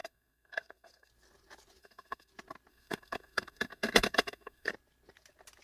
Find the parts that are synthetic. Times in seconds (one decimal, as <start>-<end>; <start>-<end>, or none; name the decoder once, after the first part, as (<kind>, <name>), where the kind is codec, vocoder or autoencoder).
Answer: 0.0-1.1 (codec, SNAC); 1.8-2.3; 2.7-4.7